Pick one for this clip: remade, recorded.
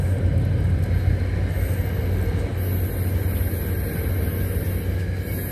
recorded